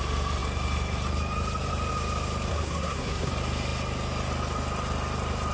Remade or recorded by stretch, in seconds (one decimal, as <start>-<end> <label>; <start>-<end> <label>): 0.0-2.5 recorded; 2.5-3.3 remade; 3.3-5.5 recorded